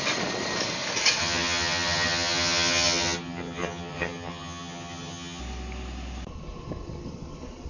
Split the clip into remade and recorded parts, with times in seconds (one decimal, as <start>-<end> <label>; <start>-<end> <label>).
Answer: 0.0-1.2 recorded; 1.2-5.4 remade; 5.4-7.7 recorded